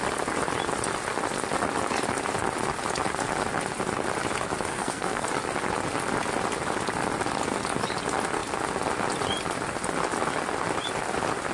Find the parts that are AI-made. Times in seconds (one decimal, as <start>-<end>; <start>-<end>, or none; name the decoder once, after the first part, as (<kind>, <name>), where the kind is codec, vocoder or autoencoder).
4.7-5.3 (codec, SNAC)